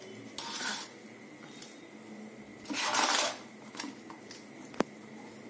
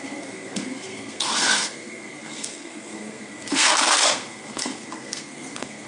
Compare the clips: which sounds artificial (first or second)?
second